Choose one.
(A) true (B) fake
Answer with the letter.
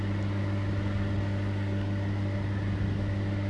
A